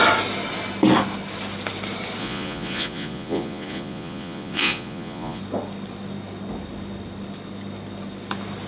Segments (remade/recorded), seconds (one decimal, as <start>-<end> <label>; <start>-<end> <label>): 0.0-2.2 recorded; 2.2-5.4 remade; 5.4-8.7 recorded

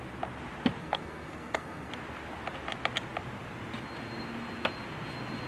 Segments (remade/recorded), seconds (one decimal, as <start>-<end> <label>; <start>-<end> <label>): 0.0-0.8 recorded; 0.8-1.9 remade; 1.9-5.5 recorded

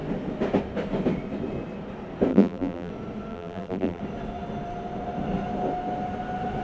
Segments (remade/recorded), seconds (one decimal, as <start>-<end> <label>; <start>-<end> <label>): 0.0-2.3 recorded; 2.3-2.9 remade; 2.9-3.3 recorded; 3.3-4.0 remade; 4.0-6.6 recorded